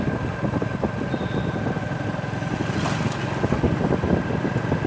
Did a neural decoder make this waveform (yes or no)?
no